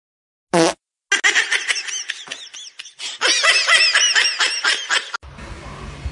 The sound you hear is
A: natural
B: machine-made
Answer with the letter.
A